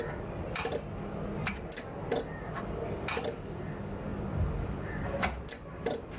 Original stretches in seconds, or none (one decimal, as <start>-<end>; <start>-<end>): 0.0-6.2

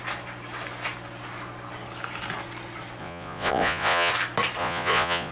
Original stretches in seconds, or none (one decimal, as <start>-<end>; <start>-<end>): 0.0-3.0; 4.1-4.6

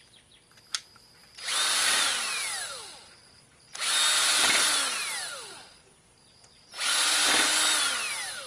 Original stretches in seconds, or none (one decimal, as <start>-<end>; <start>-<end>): 0.0-1.2; 4.2-8.5